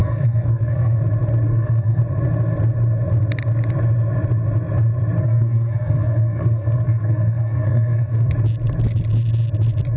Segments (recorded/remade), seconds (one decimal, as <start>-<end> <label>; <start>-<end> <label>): 0.0-1.0 remade; 1.0-1.5 recorded; 1.5-2.0 remade; 2.0-5.2 recorded; 5.2-8.3 remade; 8.3-10.0 recorded